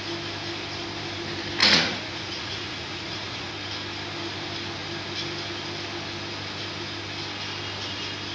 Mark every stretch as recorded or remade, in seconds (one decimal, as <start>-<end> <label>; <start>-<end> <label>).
0.0-1.6 recorded; 1.6-3.5 remade; 3.5-8.3 recorded